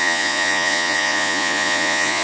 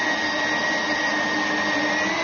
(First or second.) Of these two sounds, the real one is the second